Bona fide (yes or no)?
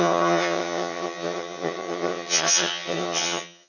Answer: no